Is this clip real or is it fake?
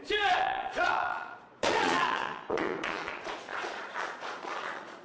fake